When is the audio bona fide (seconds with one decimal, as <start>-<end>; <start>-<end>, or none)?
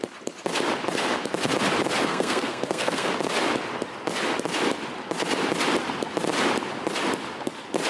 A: 0.0-2.0; 3.1-7.9